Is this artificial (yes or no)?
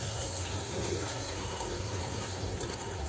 yes